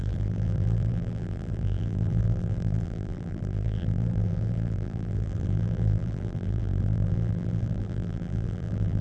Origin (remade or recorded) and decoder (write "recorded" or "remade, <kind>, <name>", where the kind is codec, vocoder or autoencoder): remade, vocoder, BigVGAN v2